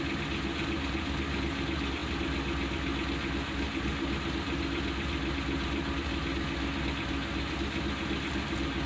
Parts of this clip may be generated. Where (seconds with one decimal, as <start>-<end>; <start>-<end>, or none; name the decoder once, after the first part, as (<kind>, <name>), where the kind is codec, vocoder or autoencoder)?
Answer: none